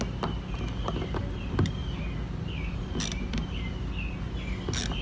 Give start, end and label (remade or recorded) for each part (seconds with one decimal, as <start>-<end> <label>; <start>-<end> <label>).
0.0-5.0 recorded